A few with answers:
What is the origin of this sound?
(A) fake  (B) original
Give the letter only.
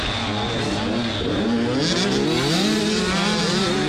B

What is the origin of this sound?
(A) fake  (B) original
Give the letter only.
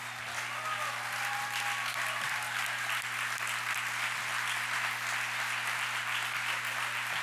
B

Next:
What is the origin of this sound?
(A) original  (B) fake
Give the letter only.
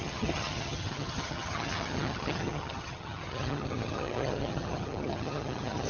B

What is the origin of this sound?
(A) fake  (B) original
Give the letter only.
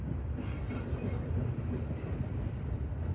B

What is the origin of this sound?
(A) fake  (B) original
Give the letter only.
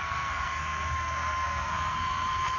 A